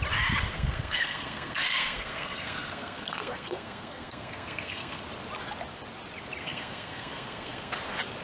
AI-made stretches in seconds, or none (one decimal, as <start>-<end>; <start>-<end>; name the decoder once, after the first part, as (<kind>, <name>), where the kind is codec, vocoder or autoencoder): 0.5-5.0 (codec, SNAC); 6.4-7.7